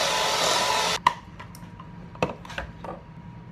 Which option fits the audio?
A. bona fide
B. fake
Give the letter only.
A